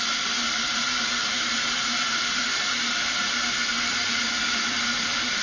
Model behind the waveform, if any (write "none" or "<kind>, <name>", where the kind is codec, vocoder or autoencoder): vocoder, BigVGAN v2